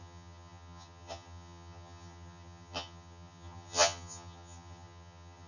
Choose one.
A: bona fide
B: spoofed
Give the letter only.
B